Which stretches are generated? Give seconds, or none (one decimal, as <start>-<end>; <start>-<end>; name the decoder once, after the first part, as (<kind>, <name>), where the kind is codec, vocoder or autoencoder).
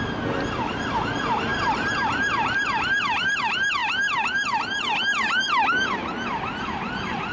none